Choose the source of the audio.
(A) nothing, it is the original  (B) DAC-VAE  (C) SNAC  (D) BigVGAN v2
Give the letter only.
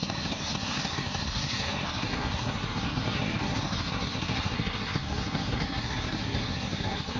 C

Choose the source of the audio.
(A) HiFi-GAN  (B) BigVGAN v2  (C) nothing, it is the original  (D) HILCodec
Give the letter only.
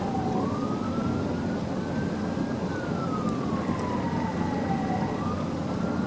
C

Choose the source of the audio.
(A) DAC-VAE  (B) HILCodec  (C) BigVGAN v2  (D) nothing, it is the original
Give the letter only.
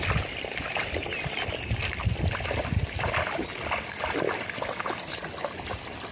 D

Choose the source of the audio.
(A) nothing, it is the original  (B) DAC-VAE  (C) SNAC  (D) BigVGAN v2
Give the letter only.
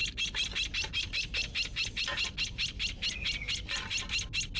A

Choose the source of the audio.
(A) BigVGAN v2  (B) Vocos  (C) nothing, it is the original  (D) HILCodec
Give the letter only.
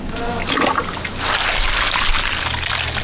C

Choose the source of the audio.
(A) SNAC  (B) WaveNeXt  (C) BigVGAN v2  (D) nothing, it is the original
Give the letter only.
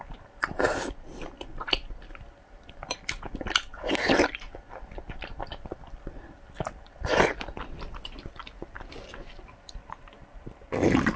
C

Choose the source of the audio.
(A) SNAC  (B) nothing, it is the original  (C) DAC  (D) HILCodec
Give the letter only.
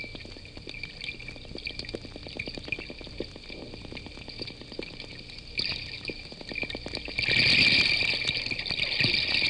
B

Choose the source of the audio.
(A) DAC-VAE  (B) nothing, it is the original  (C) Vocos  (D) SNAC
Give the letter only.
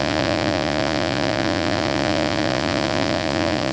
C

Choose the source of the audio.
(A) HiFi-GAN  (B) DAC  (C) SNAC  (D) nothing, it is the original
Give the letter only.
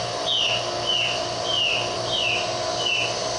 D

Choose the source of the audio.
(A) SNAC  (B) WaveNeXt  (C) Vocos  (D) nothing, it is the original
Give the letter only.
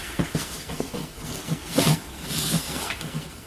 A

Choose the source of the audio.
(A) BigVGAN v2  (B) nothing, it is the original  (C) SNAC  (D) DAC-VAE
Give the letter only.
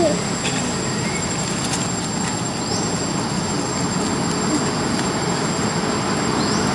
B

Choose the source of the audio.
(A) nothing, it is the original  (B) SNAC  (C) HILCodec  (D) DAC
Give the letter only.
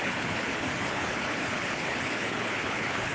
C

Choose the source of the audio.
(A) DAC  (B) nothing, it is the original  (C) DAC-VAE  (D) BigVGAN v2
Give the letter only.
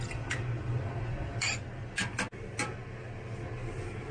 B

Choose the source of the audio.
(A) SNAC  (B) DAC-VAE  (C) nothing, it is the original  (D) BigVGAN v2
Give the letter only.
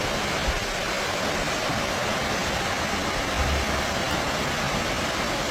C